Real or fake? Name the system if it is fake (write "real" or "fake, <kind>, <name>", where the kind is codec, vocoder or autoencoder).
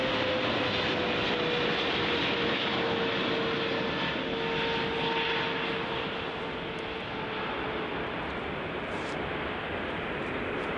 real